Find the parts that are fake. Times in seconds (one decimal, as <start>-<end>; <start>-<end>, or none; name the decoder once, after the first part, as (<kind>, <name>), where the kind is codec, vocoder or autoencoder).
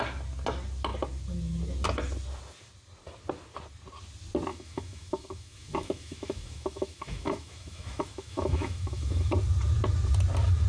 4.5-9.3 (autoencoder, DAC-VAE)